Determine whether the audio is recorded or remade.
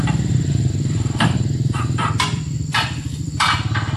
remade